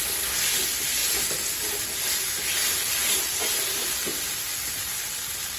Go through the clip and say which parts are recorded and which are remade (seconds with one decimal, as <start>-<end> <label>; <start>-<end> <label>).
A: 0.0-5.6 recorded